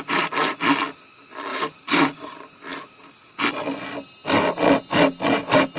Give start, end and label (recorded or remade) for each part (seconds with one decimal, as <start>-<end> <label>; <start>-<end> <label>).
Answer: 0.0-1.5 recorded; 1.5-2.6 remade; 2.6-5.8 recorded